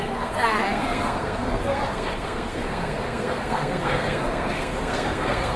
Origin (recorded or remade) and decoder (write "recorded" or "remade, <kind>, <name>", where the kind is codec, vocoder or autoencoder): remade, codec, SNAC